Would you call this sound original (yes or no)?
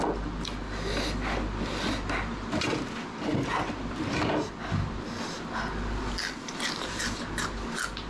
yes